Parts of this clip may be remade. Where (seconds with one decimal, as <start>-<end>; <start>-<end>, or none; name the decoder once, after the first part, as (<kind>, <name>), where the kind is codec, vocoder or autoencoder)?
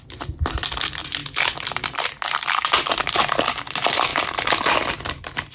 none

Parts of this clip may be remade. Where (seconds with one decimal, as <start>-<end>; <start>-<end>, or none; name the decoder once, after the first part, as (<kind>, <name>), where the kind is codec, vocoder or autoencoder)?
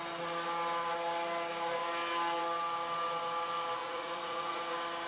3.8-4.6 (vocoder, Vocos)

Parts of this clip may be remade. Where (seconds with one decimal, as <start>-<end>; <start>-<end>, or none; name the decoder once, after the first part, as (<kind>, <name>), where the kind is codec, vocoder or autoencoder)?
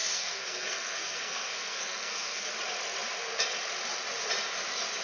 0.0-2.5 (codec, SNAC)